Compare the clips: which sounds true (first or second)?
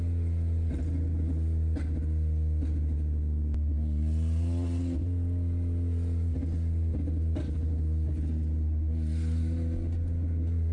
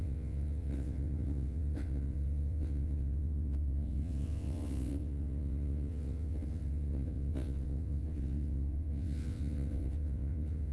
first